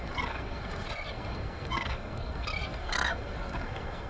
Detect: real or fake fake